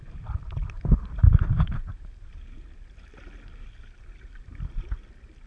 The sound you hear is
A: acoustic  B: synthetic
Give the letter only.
A